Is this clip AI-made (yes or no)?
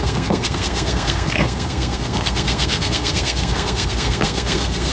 yes